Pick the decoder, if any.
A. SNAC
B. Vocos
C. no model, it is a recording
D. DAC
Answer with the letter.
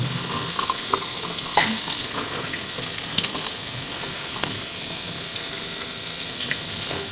A